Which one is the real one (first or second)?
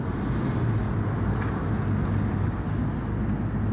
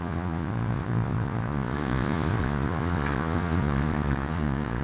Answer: first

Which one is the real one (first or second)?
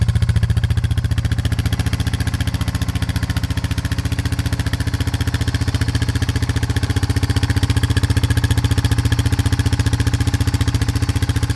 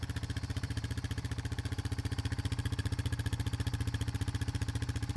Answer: first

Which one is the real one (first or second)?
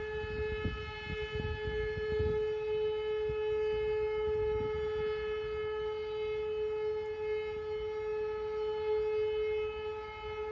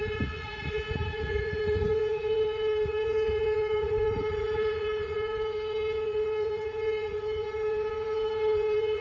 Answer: first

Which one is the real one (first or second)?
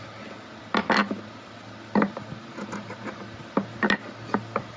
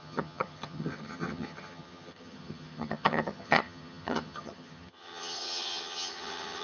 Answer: first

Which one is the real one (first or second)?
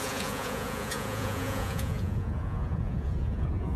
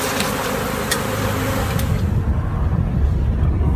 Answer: second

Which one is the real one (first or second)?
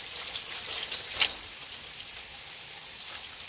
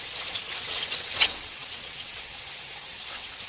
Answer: first